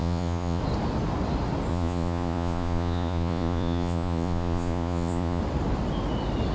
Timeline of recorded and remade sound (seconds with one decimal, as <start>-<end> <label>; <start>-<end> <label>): 0.0-0.6 remade; 0.6-1.7 recorded; 1.7-5.4 remade; 5.4-6.5 recorded